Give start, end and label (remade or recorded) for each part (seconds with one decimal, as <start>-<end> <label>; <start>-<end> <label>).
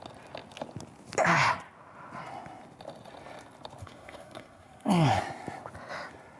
0.0-3.8 recorded; 3.8-5.2 remade; 5.2-6.4 recorded